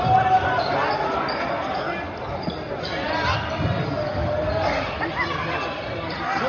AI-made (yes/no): no